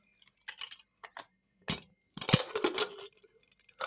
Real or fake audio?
real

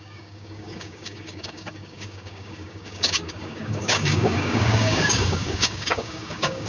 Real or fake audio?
fake